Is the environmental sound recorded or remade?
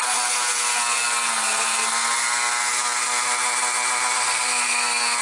recorded